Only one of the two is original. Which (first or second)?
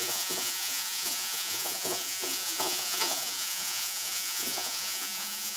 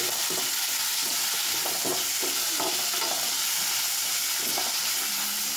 second